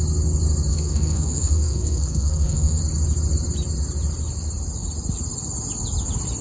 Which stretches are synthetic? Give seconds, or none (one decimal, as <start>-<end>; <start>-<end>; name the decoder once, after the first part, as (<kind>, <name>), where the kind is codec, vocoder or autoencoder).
0.7-2.8 (codec, SNAC)